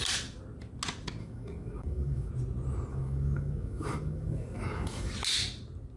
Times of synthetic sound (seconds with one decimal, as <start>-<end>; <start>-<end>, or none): 1.2-2.3; 2.9-5.1